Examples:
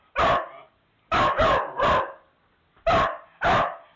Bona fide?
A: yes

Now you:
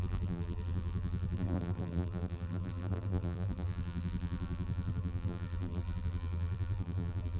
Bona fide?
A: no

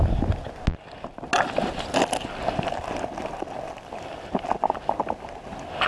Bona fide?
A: yes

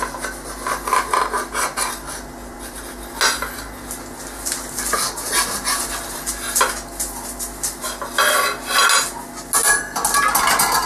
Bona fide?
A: yes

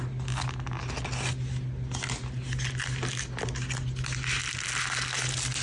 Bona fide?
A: yes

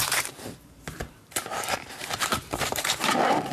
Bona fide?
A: no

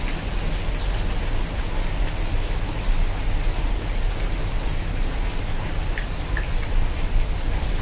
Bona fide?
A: yes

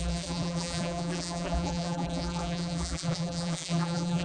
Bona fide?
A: no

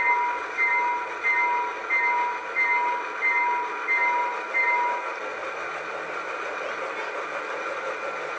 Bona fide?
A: yes